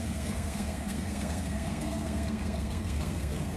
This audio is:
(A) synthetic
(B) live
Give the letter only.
A